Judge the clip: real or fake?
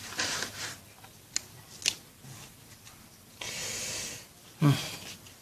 real